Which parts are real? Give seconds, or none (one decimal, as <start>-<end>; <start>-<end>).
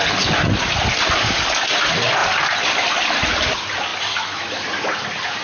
0.0-5.4